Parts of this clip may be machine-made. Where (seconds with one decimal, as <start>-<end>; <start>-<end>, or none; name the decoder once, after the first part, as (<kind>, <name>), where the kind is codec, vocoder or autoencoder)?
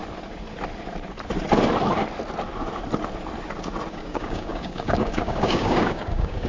3.9-6.5 (codec, DAC)